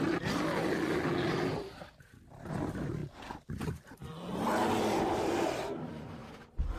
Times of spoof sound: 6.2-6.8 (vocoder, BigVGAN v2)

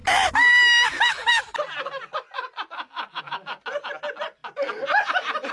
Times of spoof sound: none

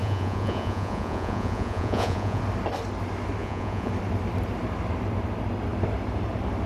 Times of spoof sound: 0.0-2.4 (vocoder, Vocos); 3.4-3.9

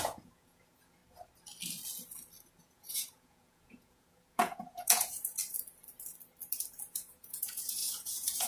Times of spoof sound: 0.0-1.0 (vocoder, Vocos); 2.6-5.4; 6.9-8.5

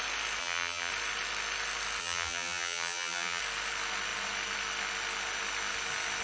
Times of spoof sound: 0.4-0.9 (vocoder, BigVGAN v2); 2.0-3.4

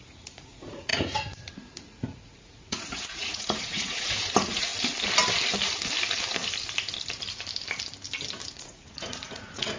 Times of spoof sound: 0.0-4.7 (vocoder, Vocos); 8.5-9.8